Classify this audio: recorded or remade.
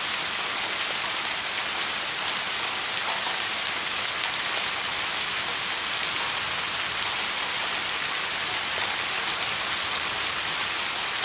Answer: recorded